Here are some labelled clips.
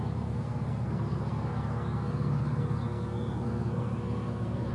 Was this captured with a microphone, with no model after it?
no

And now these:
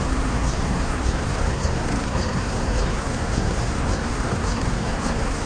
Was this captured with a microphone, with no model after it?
no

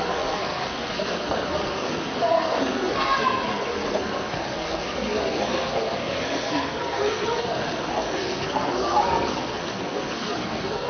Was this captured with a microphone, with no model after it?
no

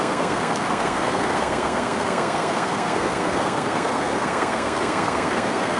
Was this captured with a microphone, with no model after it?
no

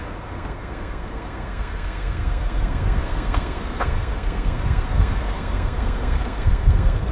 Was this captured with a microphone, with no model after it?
no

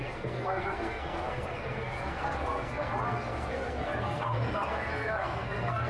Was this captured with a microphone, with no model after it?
no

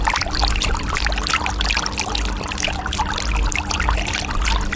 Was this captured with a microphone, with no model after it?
yes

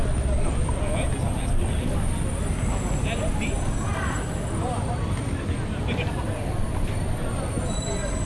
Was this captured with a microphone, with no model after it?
yes